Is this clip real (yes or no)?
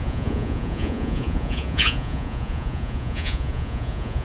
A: no